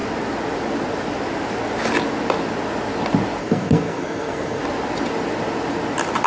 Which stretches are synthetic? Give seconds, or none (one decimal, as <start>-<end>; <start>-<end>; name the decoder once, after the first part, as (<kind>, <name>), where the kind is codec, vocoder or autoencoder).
3.4-4.6 (codec, SNAC)